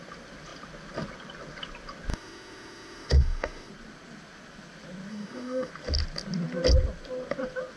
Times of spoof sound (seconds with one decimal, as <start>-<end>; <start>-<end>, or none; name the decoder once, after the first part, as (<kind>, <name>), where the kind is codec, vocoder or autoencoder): 2.1-3.7 (autoencoder, DAC-VAE); 5.1-5.7